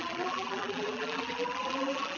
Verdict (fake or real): fake